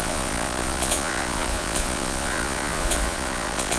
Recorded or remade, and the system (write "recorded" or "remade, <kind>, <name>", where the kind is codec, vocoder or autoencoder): remade, vocoder, Vocos